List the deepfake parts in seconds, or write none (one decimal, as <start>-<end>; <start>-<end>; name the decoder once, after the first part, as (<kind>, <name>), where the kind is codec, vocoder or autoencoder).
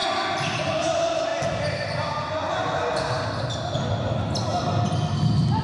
none